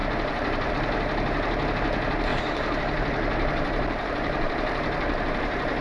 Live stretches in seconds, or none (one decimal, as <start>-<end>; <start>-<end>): 0.7-2.3